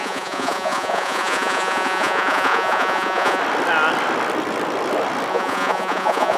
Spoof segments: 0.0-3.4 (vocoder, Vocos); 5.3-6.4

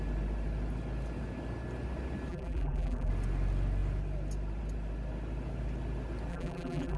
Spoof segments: 2.3-3.1 (vocoder, BigVGAN v2); 6.3-7.0